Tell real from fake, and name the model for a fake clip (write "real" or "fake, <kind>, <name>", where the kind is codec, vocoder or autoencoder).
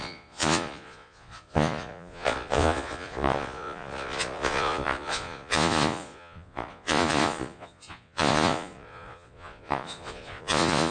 fake, vocoder, Vocos